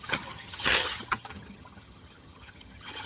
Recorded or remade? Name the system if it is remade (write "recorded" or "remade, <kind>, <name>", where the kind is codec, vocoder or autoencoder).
remade, vocoder, HiFi-GAN